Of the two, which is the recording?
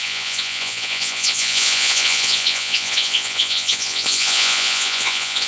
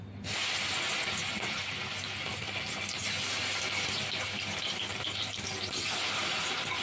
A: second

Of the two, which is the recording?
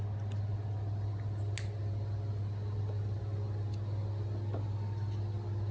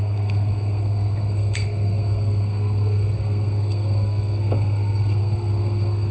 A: first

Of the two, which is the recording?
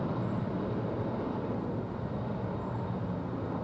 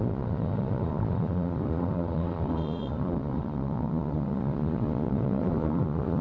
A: first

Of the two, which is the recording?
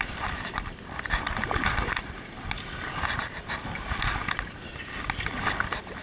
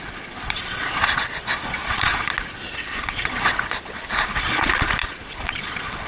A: first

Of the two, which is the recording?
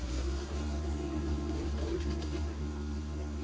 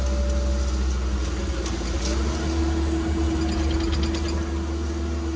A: second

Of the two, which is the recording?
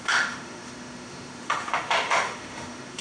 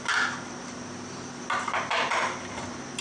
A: second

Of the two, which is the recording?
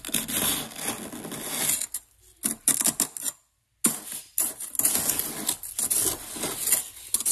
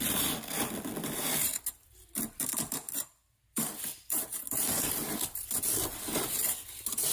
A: first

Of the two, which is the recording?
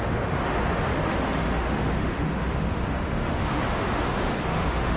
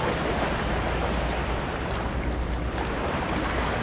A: second